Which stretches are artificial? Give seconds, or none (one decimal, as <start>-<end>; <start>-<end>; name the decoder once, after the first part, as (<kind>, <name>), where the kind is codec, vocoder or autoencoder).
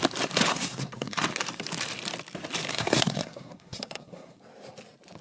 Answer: 0.5-1.2 (codec, SNAC); 2.7-4.4